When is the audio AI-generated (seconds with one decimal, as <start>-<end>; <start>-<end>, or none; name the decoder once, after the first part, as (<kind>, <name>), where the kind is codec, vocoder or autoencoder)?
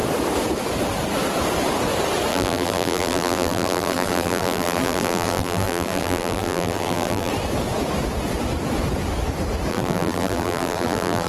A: 2.3-7.3 (vocoder, BigVGAN v2); 9.7-11.3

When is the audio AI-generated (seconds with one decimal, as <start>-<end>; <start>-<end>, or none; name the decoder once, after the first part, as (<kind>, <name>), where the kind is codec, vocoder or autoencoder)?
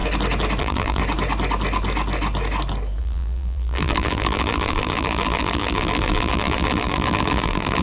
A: 0.6-1.0 (vocoder, BigVGAN v2); 3.0-7.8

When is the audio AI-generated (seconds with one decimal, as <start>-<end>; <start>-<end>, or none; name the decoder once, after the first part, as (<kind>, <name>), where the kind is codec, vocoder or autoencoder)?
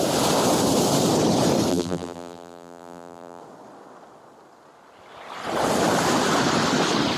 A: 1.7-3.4 (vocoder, BigVGAN v2)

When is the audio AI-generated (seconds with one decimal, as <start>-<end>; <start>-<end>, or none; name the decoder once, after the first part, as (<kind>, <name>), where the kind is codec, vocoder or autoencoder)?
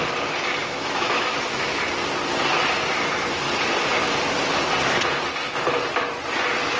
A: 0.6-1.8 (autoencoder, DAC-VAE)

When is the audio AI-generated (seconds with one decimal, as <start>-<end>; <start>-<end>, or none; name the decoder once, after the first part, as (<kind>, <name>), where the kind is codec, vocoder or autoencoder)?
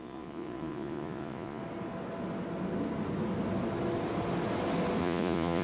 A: 0.0-1.6 (vocoder, Vocos); 5.0-5.6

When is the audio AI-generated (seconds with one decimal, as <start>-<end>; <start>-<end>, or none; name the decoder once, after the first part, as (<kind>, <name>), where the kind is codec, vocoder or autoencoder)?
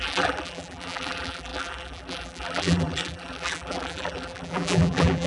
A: 0.0-5.3 (vocoder, BigVGAN v2)